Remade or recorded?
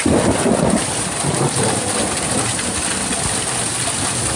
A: recorded